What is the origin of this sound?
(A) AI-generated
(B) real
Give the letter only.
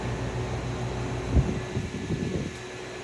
B